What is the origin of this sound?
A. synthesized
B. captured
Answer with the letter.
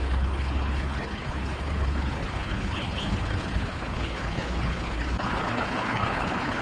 A